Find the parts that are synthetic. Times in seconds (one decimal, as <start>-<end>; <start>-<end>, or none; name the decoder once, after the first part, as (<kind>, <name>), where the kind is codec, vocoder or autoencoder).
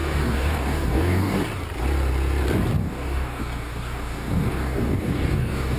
0.0-1.4 (codec, DAC); 2.8-5.8